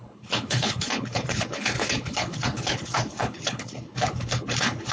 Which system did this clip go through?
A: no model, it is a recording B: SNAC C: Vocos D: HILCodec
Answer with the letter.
D